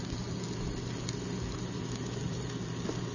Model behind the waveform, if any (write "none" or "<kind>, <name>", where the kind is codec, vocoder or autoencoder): none